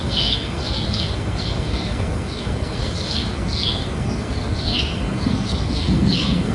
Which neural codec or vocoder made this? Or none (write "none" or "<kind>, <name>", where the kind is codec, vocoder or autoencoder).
codec, SNAC